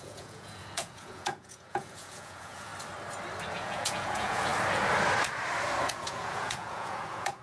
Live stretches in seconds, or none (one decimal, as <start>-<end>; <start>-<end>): 2.7-3.5; 4.5-5.9